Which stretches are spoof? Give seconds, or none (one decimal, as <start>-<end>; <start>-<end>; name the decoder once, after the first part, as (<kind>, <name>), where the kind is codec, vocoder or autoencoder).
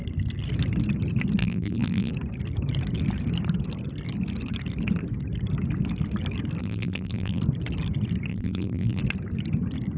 1.4-2.1 (vocoder, BigVGAN v2); 6.6-7.4; 8.3-9.0